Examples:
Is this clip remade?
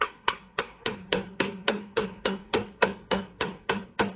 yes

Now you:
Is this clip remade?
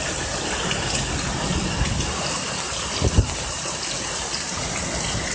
no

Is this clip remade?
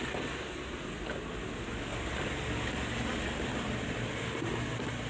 no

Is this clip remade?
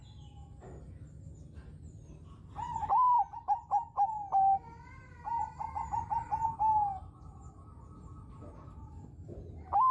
no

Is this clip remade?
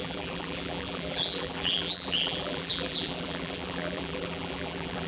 yes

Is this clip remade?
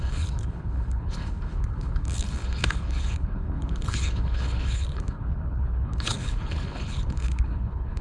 yes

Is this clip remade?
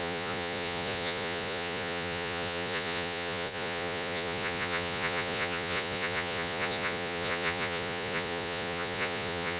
yes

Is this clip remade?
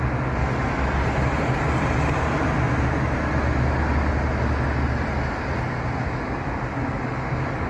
no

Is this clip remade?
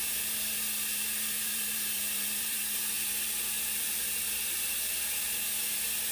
yes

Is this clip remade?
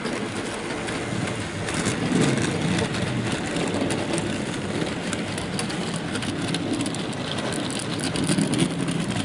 no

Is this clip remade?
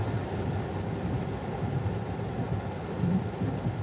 no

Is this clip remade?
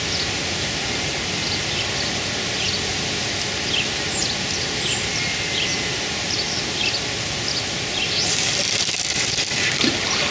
no